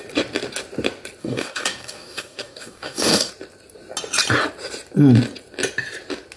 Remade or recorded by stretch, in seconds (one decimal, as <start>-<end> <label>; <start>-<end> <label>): 0.0-1.2 recorded; 1.2-3.3 remade; 3.3-6.4 recorded